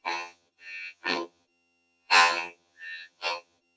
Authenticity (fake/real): fake